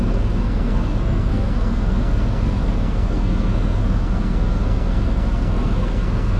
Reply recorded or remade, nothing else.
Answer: remade